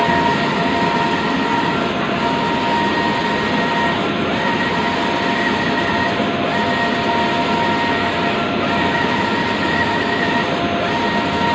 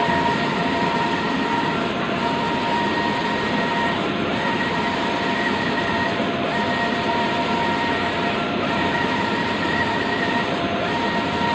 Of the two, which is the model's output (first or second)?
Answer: second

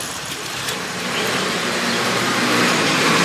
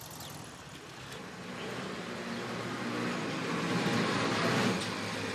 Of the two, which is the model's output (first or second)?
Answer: first